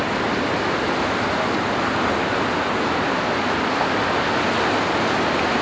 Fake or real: real